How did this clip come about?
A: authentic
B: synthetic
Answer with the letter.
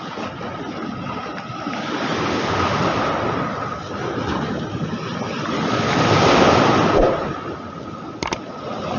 A